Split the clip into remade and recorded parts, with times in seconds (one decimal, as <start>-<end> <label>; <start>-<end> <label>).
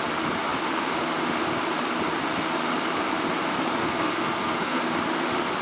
0.0-3.8 recorded; 3.8-4.8 remade; 4.8-5.6 recorded